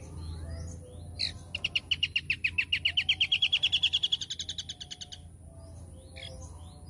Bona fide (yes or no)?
yes